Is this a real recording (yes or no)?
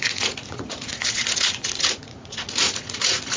no